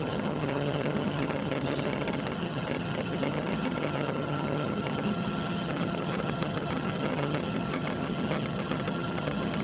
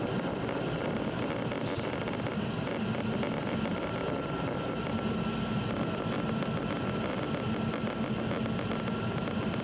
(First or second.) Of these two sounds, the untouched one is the second